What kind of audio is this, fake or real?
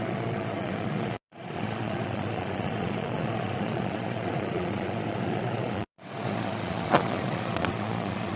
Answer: fake